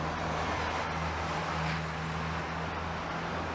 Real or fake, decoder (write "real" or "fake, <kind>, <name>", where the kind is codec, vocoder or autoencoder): real